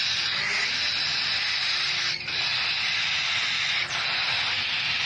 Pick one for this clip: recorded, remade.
recorded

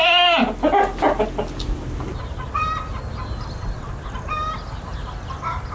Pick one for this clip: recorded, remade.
recorded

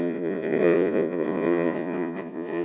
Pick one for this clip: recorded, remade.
remade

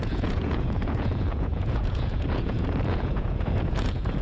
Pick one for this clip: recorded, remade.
remade